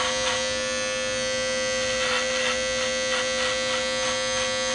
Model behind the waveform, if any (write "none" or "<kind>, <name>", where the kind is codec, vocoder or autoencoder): none